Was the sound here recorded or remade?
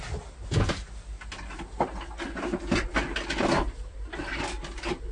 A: recorded